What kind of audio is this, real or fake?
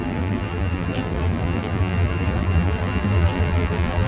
fake